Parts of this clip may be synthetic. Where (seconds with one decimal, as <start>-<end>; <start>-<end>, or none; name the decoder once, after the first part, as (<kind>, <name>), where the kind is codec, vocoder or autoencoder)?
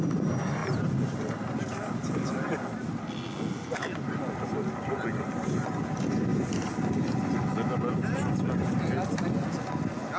none